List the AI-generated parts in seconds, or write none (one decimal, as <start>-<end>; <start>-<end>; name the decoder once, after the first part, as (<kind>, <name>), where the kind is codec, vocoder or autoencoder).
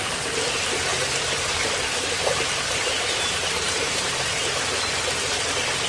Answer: 0.9-4.4 (vocoder, BigVGAN v2)